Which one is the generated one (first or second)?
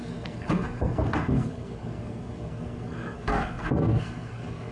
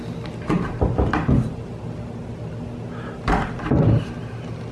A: first